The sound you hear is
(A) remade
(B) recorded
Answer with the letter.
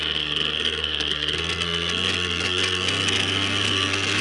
A